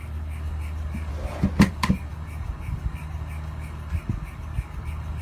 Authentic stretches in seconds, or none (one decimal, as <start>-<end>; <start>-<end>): 1.1-1.7